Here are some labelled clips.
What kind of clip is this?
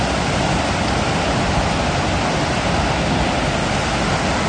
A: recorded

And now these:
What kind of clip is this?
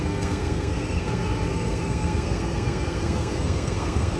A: remade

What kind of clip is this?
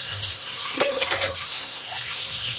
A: remade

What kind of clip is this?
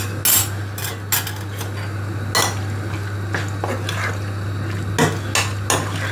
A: recorded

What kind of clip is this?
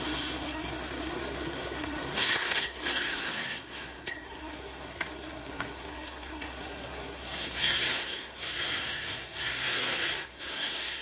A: remade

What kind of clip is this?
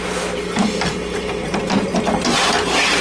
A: recorded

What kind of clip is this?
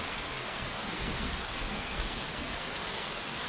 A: remade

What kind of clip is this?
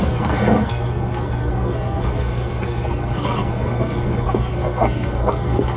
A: remade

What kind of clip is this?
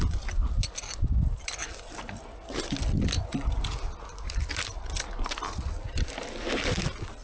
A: recorded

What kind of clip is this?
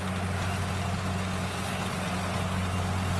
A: recorded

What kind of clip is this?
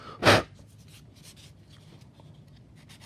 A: recorded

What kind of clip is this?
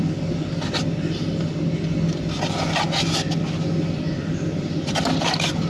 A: recorded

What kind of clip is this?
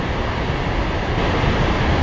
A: recorded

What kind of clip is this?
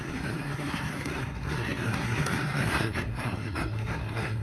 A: remade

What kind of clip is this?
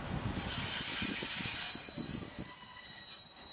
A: recorded